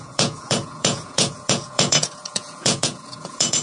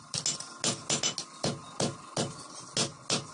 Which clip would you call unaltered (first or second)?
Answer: second